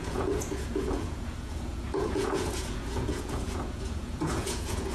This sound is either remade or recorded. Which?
remade